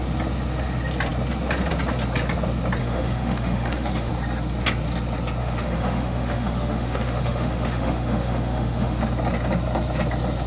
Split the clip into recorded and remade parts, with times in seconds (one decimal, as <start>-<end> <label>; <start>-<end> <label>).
0.0-2.8 recorded; 2.8-4.1 remade; 4.1-5.4 recorded; 5.4-9.0 remade; 9.0-10.5 recorded